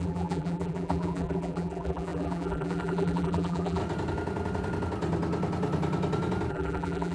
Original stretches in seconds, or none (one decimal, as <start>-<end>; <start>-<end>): 3.8-6.5